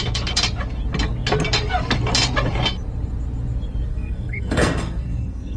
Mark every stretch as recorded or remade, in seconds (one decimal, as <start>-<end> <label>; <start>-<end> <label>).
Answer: 0.0-3.9 recorded; 3.9-5.6 remade